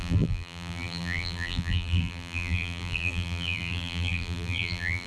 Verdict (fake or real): fake